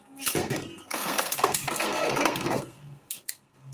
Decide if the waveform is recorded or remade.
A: remade